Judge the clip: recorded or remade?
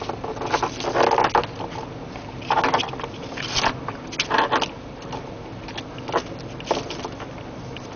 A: recorded